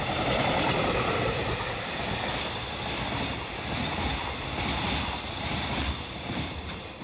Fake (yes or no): yes